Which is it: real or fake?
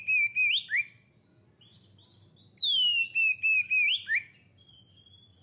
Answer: real